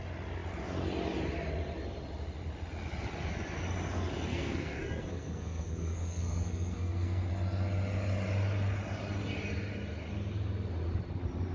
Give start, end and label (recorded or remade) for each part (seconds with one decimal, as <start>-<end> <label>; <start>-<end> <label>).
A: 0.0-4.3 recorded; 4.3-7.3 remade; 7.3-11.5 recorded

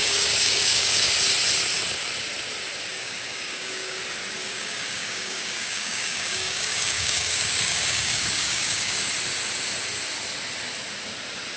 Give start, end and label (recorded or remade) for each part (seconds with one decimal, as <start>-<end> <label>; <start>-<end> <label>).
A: 0.0-1.2 remade; 1.2-2.9 recorded; 2.9-4.0 remade; 4.0-4.4 recorded; 4.4-9.1 remade; 9.1-11.6 recorded

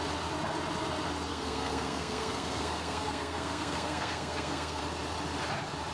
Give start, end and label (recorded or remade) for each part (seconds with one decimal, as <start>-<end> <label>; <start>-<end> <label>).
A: 0.0-1.3 recorded; 1.3-4.8 remade; 4.8-5.9 recorded

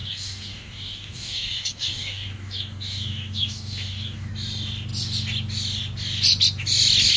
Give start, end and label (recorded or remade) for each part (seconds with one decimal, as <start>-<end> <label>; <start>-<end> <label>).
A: 0.0-4.3 remade; 4.3-7.2 recorded

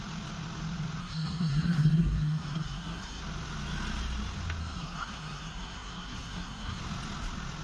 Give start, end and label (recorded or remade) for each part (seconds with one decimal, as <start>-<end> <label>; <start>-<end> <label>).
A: 0.0-1.0 recorded; 1.0-3.2 remade; 3.2-4.6 recorded; 4.6-6.8 remade; 6.8-7.6 recorded